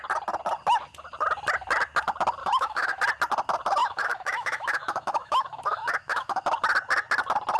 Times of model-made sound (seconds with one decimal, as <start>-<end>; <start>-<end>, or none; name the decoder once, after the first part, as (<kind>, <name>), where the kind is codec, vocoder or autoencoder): 2.4-3.0 (autoencoder, DAC-VAE); 3.8-6.4